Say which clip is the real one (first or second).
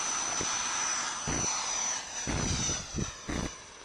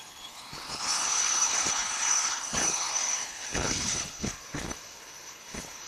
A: first